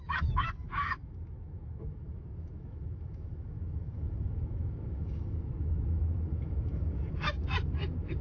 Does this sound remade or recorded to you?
remade